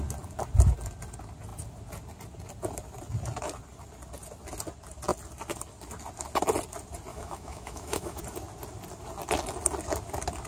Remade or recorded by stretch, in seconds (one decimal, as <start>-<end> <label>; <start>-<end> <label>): 0.0-7.1 recorded; 7.1-8.2 remade; 8.2-10.5 recorded